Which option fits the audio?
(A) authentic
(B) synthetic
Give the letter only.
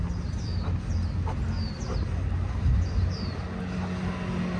A